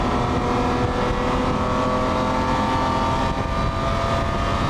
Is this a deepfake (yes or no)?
no